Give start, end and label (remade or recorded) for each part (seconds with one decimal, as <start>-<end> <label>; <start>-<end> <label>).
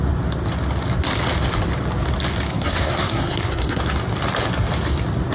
0.0-2.5 recorded; 2.5-3.8 remade; 3.8-5.3 recorded